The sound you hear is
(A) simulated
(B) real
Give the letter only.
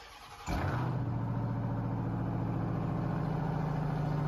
B